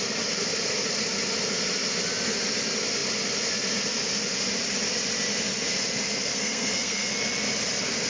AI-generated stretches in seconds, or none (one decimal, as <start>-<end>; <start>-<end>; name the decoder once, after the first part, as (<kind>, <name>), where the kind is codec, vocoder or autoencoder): 6.3-7.1 (codec, SNAC)